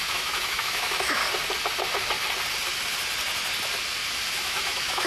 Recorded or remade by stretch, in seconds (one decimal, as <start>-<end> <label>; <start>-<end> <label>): 0.0-1.2 remade; 1.2-4.3 recorded; 4.3-5.1 remade